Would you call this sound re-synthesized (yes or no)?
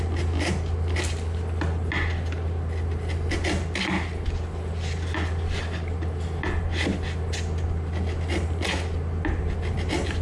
no